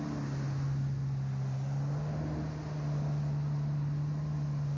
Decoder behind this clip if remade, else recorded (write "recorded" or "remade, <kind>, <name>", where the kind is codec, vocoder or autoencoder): recorded